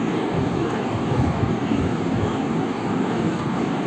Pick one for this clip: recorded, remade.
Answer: remade